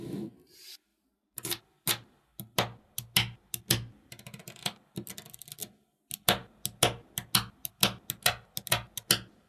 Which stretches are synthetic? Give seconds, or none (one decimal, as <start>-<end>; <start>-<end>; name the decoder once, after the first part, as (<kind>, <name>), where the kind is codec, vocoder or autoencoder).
0.9-1.6 (vocoder, BigVGAN v2)